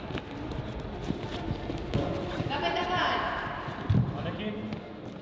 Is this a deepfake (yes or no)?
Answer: no